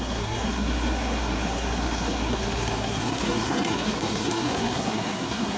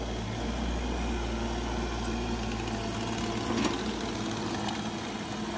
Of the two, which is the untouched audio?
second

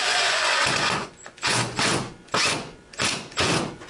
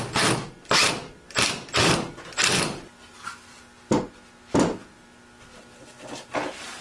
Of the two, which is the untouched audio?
second